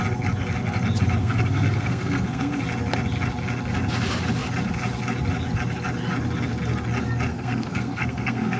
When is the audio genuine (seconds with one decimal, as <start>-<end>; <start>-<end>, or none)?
0.0-1.2; 2.6-7.3

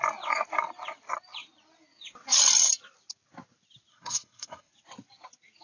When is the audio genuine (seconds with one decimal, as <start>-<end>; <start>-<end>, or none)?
0.0-3.9; 4.7-5.6